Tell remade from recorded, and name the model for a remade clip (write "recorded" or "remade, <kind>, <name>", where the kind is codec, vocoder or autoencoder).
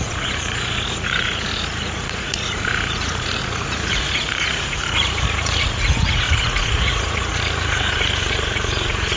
remade, vocoder, Vocos